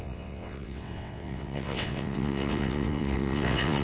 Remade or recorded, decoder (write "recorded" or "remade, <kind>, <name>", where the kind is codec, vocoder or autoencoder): remade, vocoder, WaveNeXt